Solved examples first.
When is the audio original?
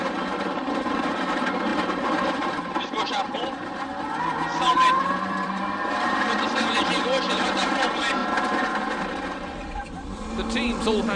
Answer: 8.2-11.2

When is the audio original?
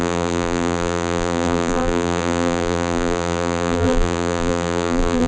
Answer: none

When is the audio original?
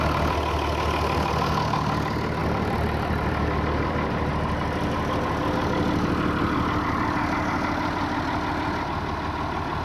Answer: 0.0-2.4; 4.3-9.8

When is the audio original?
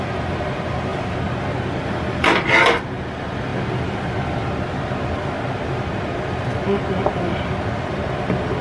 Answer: 0.9-1.8; 3.5-7.9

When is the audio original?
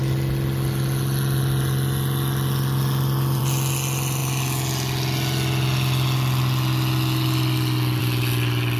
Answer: 0.0-8.8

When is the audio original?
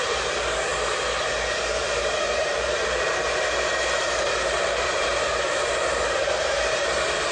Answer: 0.7-1.8